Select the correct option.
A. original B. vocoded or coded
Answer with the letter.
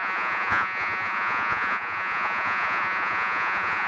B